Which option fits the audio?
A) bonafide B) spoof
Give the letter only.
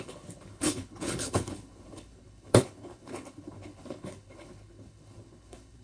B